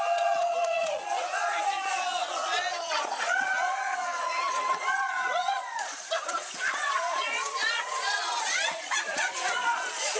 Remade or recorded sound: remade